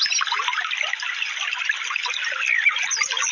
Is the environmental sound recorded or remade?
recorded